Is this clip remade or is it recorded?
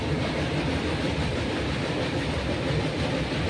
recorded